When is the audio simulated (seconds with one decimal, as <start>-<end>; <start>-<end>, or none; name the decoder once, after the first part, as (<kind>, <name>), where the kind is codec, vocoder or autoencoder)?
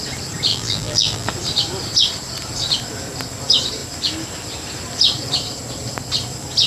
0.5-1.3 (vocoder, BigVGAN v2)